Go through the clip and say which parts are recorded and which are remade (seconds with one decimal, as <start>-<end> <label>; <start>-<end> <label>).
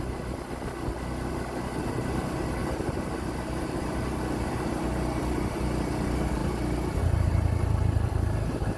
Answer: 0.0-2.6 recorded; 2.6-3.4 remade; 3.4-8.8 recorded